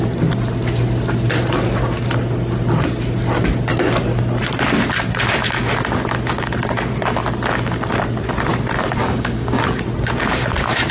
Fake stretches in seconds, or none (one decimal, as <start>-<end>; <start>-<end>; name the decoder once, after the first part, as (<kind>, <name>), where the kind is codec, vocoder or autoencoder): 9.0-9.6 (codec, DAC)